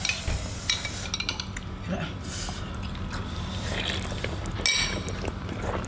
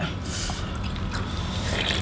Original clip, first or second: first